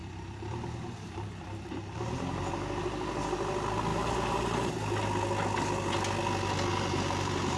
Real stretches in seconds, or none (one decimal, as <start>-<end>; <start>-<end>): 2.5-3.9; 4.7-6.7